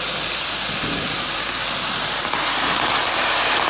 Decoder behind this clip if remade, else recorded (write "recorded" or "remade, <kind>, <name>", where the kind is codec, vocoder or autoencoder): recorded